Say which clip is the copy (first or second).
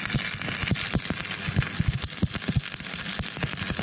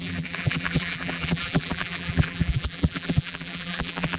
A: second